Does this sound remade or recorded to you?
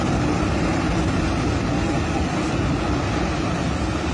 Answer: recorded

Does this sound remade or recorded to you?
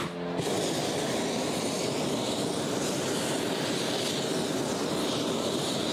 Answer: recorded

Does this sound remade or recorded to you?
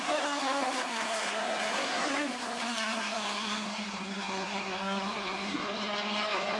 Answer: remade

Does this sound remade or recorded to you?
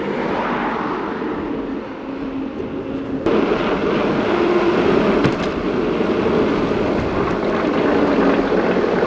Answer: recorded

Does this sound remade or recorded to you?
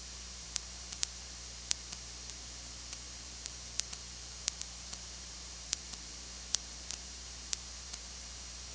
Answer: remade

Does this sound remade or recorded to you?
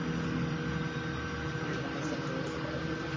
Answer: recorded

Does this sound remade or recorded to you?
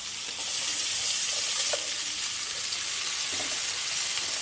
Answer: recorded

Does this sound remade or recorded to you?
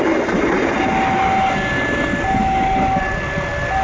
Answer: recorded